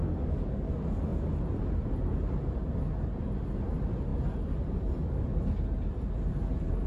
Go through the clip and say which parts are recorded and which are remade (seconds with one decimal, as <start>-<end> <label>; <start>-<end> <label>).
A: 0.0-0.7 remade; 0.7-6.9 recorded